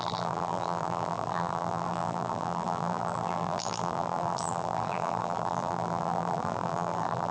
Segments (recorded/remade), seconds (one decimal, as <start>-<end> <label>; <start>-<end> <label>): 0.0-7.3 remade